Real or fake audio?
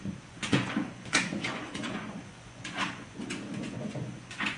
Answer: fake